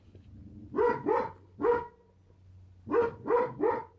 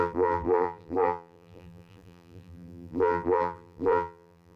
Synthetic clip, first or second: second